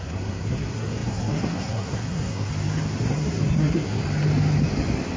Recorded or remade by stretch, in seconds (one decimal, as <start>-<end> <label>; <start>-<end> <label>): 0.0-2.5 remade; 2.5-3.0 recorded; 3.0-4.0 remade; 4.0-5.2 recorded

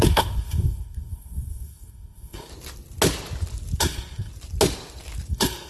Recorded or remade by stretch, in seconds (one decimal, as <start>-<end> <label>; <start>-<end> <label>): 0.0-2.5 remade; 2.5-3.8 recorded; 3.8-4.3 remade; 4.3-5.3 recorded; 5.3-5.7 remade

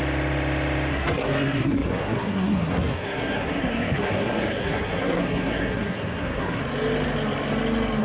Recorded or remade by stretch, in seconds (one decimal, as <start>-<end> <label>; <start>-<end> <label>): 0.0-0.9 recorded; 0.9-6.6 remade; 6.6-8.0 recorded

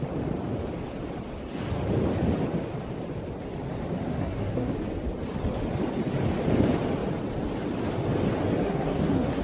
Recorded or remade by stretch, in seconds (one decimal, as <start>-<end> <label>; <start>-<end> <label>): 0.0-4.1 recorded; 4.1-4.7 remade; 4.7-8.6 recorded; 8.6-9.4 remade

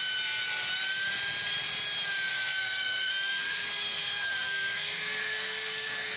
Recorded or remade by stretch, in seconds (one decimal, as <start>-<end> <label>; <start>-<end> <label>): 0.0-2.3 recorded; 2.3-6.2 remade